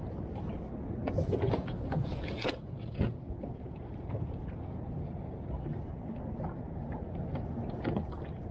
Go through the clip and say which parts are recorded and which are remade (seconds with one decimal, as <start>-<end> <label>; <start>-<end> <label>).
0.0-1.0 recorded; 1.0-4.9 remade; 4.9-8.5 recorded